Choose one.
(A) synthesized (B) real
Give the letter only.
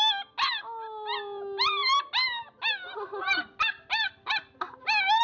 B